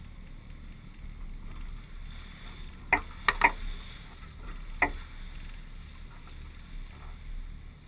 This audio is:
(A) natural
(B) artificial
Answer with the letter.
A